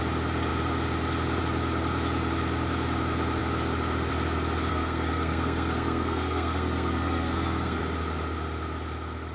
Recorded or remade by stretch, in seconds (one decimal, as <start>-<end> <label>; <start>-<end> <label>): 0.0-4.7 recorded; 4.7-7.8 remade; 7.8-9.3 recorded